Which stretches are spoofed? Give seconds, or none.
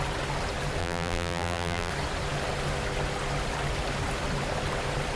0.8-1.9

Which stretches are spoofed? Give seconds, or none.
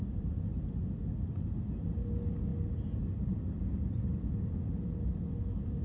none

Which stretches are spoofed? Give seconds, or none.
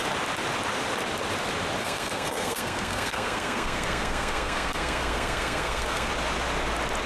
1.8-6.1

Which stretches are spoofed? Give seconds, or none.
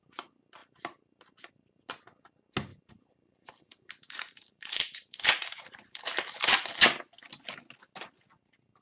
2.7-6.8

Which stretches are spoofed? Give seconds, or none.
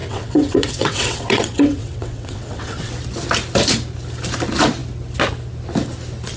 0.0-2.9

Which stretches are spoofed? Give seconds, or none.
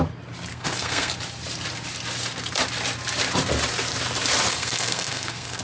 0.5-1.1; 4.5-5.6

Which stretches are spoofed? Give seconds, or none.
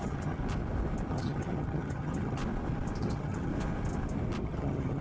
0.0-0.4; 1.1-2.4; 3.0-3.5; 4.4-5.0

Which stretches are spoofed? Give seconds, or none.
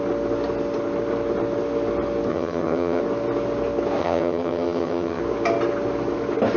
2.3-3.0; 4.0-5.2